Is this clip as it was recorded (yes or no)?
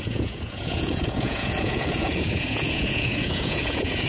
no